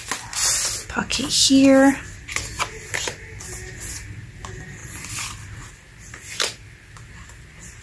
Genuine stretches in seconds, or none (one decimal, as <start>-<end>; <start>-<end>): 0.0-7.8